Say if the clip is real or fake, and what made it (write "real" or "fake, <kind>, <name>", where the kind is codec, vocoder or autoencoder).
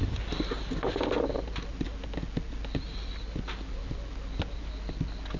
real